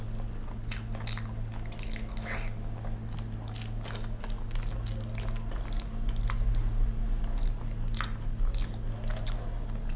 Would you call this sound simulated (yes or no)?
no